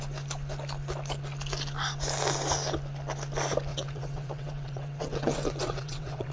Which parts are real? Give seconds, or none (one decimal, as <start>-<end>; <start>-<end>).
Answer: 0.0-3.7